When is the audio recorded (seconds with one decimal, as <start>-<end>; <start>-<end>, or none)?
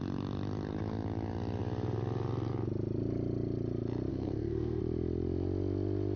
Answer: 0.0-4.1; 4.8-6.2